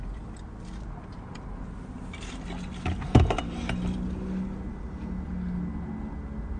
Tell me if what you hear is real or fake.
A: real